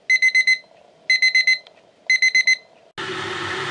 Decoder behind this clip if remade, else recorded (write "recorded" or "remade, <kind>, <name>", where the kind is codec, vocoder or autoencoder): recorded